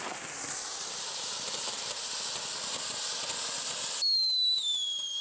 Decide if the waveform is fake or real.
real